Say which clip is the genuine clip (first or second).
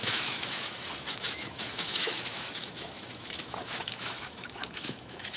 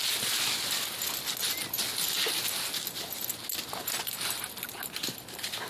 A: second